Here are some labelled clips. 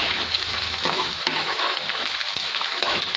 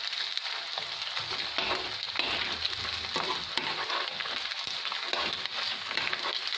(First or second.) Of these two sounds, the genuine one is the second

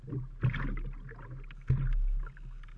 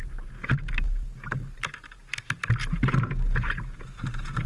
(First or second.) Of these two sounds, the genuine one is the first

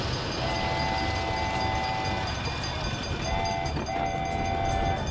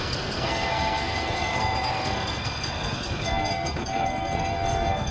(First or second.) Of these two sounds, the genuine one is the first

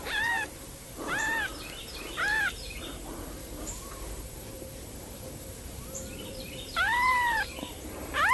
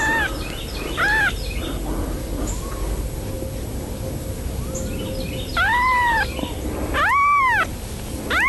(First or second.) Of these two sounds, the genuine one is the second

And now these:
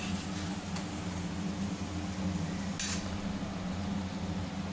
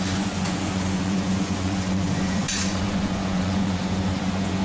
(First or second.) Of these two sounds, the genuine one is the first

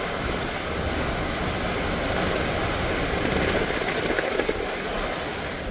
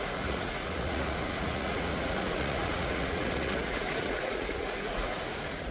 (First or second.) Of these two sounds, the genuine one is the first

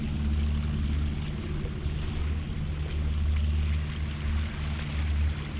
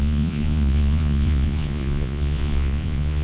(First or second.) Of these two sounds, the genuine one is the first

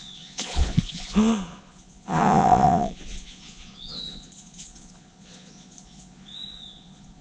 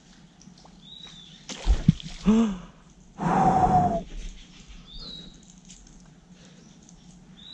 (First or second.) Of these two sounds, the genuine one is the second